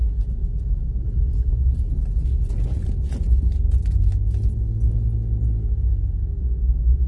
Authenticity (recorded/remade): recorded